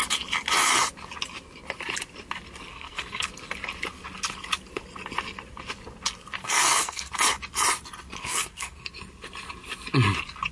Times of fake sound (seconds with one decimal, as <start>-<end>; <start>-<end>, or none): 2.7-3.3; 6.4-7.1; 8.2-8.9